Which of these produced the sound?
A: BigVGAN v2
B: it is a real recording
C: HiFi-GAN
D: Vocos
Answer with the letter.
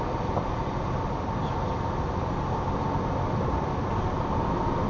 B